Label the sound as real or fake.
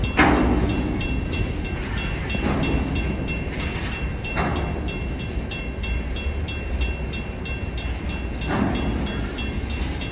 real